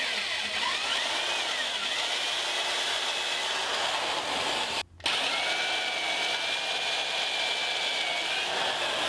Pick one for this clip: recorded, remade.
recorded